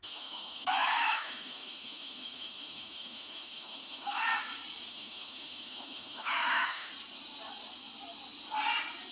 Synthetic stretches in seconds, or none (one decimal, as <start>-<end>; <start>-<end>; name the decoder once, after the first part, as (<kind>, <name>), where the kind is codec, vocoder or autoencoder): 0.0-4.3 (autoencoder, DAC-VAE); 4.9-6.9